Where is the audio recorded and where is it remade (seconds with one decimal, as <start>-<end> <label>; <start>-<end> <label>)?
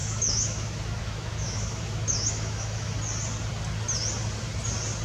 0.0-2.9 remade; 2.9-5.0 recorded